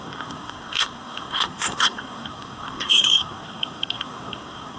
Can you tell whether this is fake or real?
fake